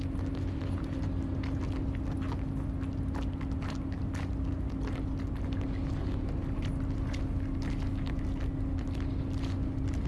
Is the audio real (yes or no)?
yes